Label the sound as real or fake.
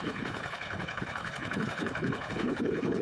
fake